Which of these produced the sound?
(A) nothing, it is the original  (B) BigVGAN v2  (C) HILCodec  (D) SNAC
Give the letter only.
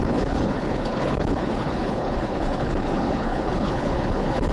C